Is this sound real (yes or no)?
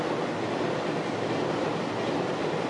yes